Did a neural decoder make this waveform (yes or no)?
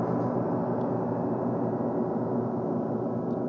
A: no